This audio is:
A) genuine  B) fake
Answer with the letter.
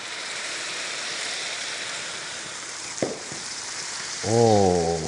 B